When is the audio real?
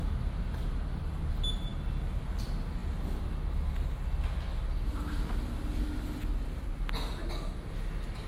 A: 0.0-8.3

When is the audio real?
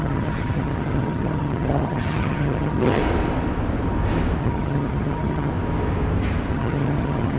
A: 3.0-4.4; 5.5-6.5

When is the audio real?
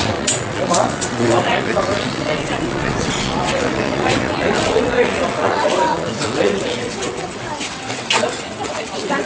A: none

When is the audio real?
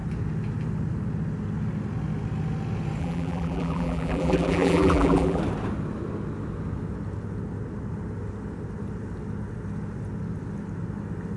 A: 0.0-3.0; 5.4-11.4